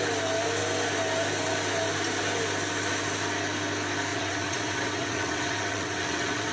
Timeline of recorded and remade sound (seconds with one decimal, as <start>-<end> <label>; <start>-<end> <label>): 0.0-4.1 recorded; 4.1-6.5 remade